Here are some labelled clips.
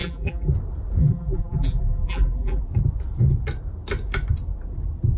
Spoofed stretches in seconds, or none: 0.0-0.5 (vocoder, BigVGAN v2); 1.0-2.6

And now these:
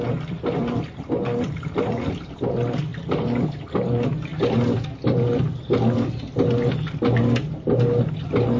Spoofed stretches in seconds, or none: none

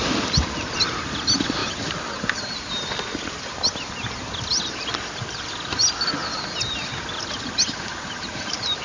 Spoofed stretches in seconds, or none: none

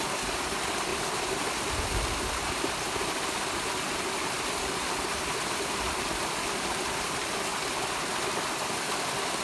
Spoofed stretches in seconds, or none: 0.9-4.8 (vocoder, BigVGAN v2); 7.5-8.4